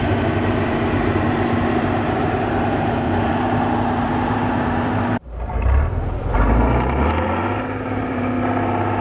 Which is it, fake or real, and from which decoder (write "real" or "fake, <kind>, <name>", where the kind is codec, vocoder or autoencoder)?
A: fake, vocoder, BigVGAN v2